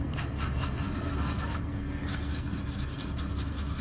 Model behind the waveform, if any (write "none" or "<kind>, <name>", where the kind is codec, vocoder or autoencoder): codec, SNAC